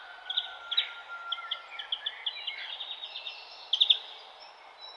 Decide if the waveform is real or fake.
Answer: real